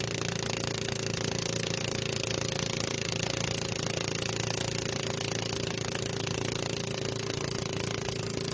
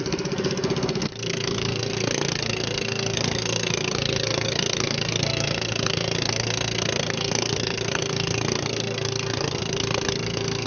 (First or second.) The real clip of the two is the first